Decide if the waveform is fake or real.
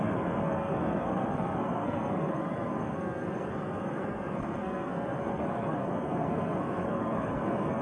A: fake